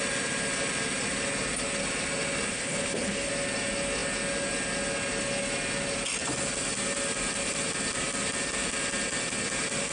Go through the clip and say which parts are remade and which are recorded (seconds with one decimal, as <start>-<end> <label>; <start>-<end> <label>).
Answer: 0.0-2.5 recorded; 2.5-3.3 remade; 3.3-9.9 recorded